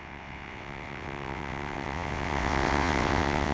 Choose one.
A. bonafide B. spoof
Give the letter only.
B